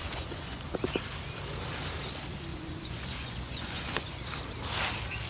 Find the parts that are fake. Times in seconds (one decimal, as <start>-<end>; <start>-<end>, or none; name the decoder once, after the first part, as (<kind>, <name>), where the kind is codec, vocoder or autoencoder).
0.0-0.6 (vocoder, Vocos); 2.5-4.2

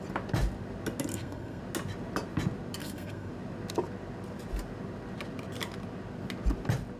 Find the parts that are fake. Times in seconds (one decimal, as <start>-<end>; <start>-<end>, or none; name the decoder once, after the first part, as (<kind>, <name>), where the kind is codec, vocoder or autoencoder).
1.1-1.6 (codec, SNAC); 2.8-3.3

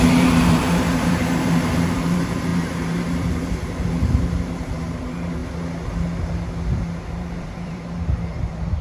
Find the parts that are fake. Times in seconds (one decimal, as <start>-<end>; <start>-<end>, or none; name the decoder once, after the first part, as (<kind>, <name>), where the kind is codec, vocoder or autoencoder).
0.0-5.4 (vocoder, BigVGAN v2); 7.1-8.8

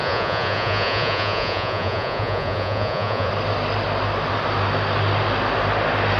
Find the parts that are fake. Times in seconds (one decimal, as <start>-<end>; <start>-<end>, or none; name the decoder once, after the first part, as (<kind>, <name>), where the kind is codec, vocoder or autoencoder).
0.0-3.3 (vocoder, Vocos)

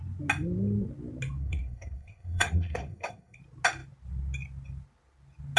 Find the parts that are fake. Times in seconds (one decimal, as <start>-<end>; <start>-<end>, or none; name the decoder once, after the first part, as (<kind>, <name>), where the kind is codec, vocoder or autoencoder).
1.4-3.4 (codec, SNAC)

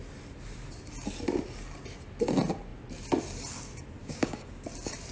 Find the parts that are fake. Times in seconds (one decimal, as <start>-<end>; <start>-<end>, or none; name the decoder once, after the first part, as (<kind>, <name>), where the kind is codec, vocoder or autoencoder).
4.0-4.5 (codec, DAC)

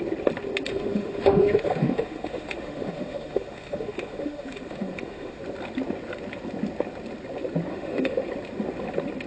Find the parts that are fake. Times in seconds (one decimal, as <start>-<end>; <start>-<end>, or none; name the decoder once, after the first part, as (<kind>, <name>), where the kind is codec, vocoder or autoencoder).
0.7-5.4 (autoencoder, DAC-VAE); 7.7-8.3